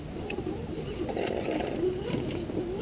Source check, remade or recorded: recorded